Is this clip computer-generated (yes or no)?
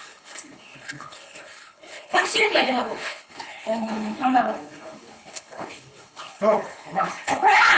yes